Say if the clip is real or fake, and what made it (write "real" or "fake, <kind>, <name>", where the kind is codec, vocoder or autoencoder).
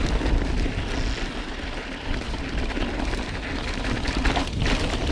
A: real